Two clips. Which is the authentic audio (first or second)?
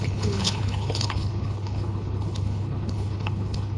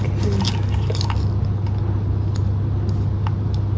second